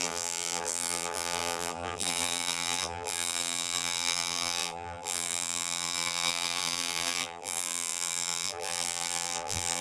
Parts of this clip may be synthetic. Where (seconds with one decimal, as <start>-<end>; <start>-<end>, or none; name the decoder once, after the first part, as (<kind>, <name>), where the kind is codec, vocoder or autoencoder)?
0.0-9.8 (vocoder, BigVGAN v2)